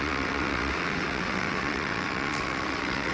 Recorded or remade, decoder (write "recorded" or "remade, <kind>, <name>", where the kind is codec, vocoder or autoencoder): remade, vocoder, WaveNeXt